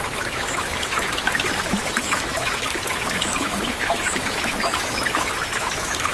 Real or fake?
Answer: fake